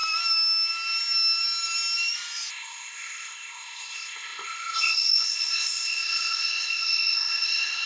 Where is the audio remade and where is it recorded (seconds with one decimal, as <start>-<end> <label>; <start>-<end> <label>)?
0.0-2.5 recorded; 2.5-7.9 remade